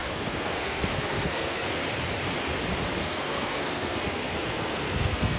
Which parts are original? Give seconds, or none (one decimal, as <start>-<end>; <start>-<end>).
1.8-3.0